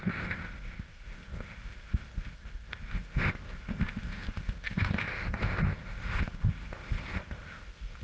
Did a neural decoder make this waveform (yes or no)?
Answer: yes